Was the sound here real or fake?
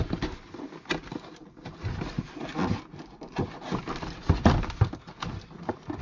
real